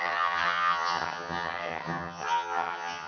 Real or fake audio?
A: fake